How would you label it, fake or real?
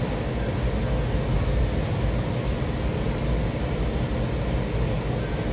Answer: real